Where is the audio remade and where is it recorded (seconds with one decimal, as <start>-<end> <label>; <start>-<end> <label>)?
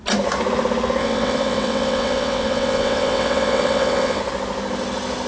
0.0-1.0 recorded; 1.0-4.2 remade; 4.2-5.3 recorded